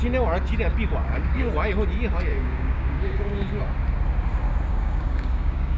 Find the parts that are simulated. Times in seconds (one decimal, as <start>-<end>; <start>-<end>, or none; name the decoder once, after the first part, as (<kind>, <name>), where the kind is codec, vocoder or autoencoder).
1.0-1.5 (codec, DAC); 2.3-3.6; 4.7-5.8